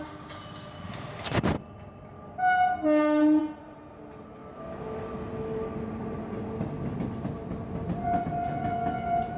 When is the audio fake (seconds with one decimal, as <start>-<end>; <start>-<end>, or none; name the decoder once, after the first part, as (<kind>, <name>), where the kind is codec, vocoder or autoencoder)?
none